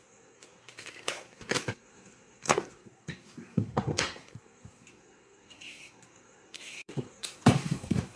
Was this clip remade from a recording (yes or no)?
yes